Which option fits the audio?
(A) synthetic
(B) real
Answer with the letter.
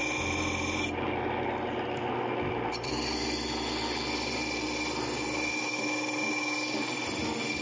B